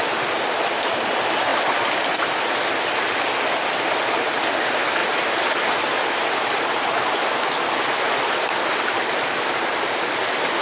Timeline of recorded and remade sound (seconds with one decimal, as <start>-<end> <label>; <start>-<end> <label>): 0.0-5.0 recorded; 5.0-6.9 remade; 6.9-10.6 recorded